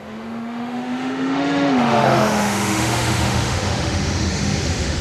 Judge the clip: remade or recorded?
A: remade